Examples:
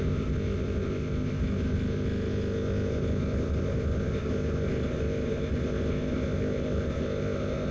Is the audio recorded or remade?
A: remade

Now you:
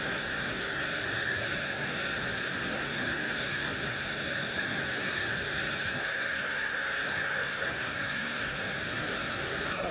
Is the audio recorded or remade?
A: remade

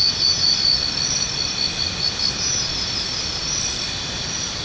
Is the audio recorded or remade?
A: recorded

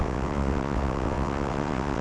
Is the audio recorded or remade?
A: remade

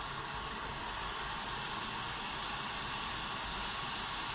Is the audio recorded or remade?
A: recorded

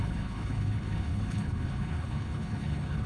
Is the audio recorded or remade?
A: remade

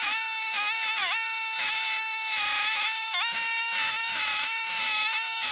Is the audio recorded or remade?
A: remade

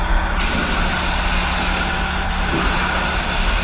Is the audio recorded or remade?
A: recorded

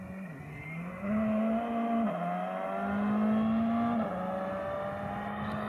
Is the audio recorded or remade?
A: recorded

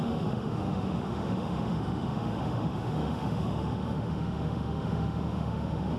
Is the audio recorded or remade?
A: remade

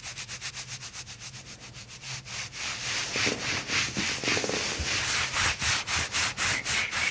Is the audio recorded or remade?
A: recorded